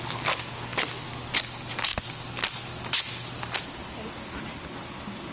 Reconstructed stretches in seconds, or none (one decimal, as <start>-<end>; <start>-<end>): none

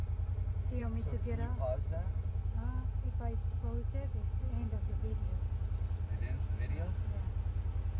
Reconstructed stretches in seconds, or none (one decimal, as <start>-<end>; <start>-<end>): none

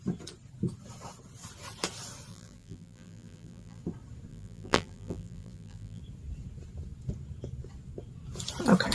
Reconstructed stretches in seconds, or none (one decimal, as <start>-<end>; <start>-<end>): 2.3-3.8; 4.3-6.0

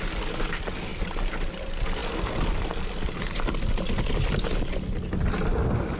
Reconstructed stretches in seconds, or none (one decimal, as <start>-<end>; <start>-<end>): 0.9-1.6

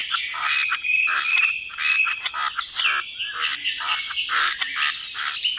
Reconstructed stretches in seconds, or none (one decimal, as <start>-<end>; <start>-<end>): none

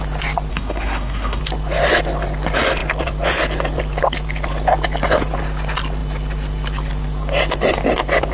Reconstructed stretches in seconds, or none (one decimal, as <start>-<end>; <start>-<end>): 0.5-1.4

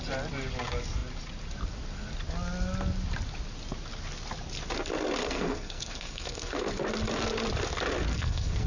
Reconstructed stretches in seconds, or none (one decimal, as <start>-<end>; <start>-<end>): 5.2-6.7; 8.1-8.7

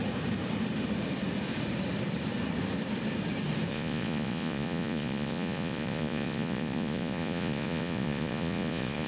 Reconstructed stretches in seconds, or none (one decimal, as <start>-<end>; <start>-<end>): 3.7-9.1